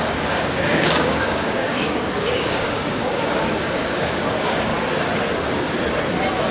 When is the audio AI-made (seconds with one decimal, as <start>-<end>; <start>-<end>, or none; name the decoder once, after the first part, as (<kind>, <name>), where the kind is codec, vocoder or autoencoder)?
0.0-4.7 (codec, DAC)